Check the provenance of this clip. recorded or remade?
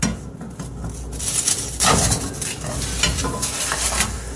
recorded